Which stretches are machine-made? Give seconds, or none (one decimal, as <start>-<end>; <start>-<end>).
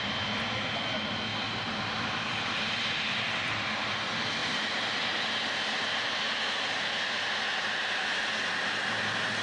1.3-3.9